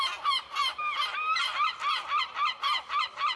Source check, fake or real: real